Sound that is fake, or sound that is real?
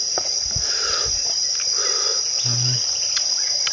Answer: real